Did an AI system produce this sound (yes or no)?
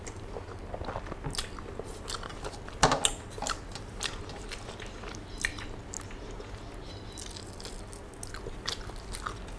no